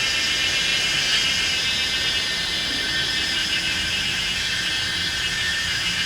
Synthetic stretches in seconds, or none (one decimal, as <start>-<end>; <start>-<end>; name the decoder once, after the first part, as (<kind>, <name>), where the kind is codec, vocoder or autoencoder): 3.4-4.7 (autoencoder, DAC-VAE); 5.3-6.1